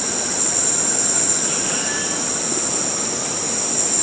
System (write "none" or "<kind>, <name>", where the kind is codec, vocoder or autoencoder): none